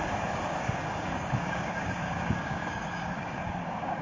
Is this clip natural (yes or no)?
no